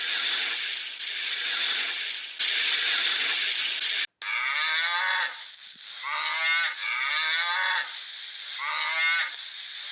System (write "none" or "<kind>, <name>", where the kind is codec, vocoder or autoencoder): none